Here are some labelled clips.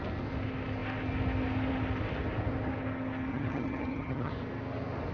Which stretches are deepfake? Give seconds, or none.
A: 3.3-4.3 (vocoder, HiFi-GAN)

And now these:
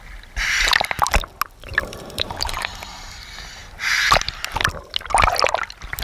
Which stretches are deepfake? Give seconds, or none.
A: 1.7-3.1 (vocoder, BigVGAN v2)

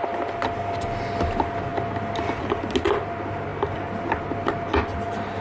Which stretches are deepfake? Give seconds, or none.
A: none

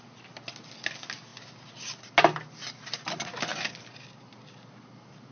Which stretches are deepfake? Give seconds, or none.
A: none

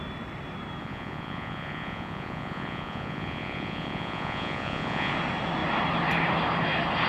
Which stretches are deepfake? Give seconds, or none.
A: 0.8-5.1 (vocoder, Vocos)

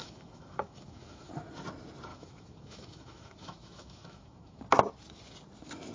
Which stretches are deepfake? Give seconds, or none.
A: 0.0-1.3 (autoencoder, DAC-VAE); 2.1-4.6